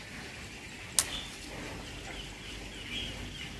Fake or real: real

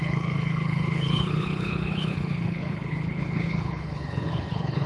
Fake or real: fake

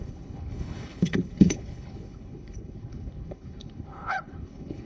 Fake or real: fake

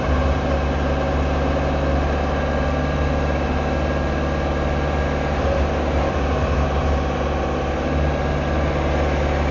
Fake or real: real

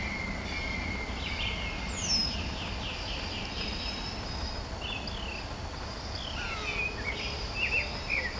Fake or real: real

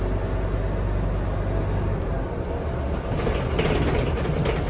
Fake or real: real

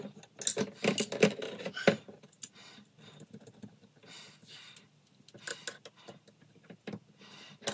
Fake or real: real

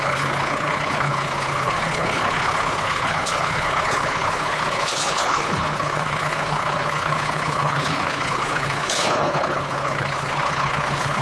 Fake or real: fake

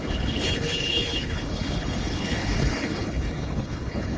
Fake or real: fake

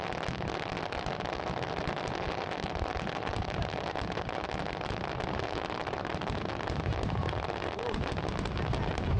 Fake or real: real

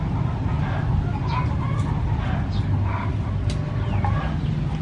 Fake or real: real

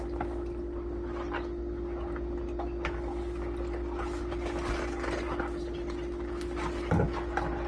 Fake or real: real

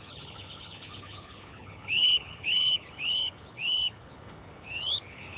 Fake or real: fake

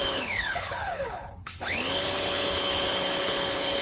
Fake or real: fake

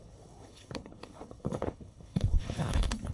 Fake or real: fake